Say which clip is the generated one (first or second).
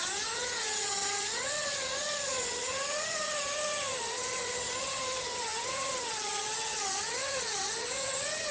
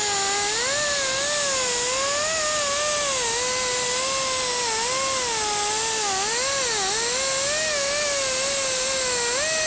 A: first